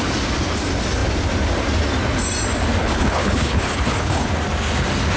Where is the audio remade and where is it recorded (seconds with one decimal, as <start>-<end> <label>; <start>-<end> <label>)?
0.0-2.8 recorded; 2.8-4.3 remade; 4.3-5.2 recorded